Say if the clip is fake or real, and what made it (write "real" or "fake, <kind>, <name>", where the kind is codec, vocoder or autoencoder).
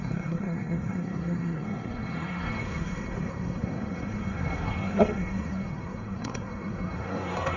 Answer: fake, codec, SNAC